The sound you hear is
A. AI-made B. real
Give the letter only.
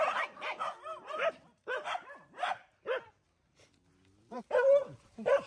A